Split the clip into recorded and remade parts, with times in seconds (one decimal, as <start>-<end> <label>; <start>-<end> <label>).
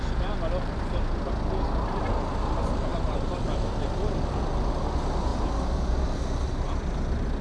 0.0-7.4 recorded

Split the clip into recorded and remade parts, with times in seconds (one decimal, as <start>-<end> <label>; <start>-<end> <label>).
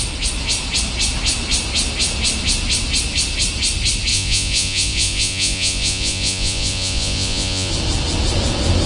0.0-4.1 recorded; 4.1-7.7 remade; 7.7-8.9 recorded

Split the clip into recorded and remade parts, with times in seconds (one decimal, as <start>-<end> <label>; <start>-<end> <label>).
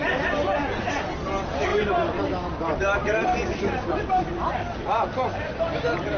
0.0-6.2 recorded